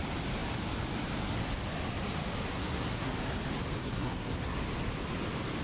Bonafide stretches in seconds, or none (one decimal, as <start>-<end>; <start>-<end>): 0.0-2.5; 3.1-3.8; 4.6-5.6